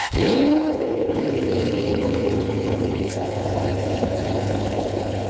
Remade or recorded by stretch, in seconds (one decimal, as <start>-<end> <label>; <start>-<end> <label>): 0.0-5.3 remade